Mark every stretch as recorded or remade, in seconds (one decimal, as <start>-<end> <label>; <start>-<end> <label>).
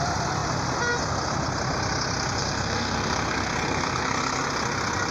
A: 0.0-2.4 recorded; 2.4-4.4 remade; 4.4-5.1 recorded